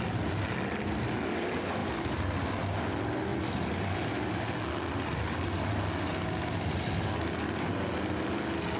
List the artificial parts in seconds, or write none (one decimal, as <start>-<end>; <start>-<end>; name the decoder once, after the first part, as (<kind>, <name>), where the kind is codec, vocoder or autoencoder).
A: none